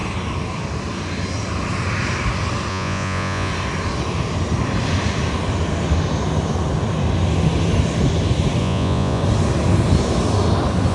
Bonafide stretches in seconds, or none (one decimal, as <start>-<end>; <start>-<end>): 0.0-2.7; 3.5-8.6; 9.2-10.9

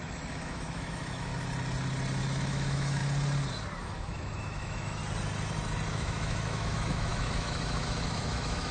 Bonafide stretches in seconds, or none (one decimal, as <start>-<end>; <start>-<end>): 1.3-2.2; 3.0-3.8; 5.0-5.9

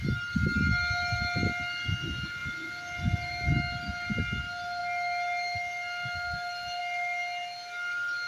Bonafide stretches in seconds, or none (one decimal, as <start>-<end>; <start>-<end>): 0.0-8.3

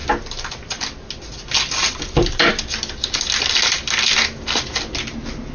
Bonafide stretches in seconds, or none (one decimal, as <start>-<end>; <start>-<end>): 0.0-5.5

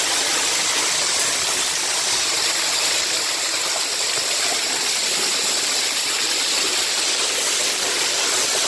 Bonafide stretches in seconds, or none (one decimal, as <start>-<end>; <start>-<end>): 0.0-5.0; 6.5-8.7